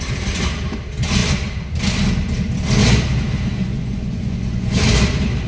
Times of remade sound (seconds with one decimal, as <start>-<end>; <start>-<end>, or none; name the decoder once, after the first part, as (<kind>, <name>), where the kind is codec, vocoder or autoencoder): 3.6-4.8 (vocoder, Vocos)